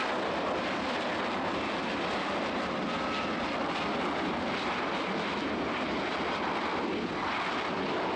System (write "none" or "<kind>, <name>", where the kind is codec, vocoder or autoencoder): none